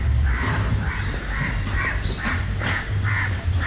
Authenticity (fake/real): fake